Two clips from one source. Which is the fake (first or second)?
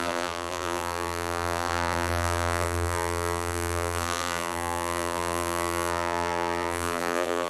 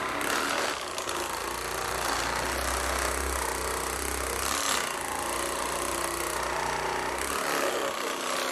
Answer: first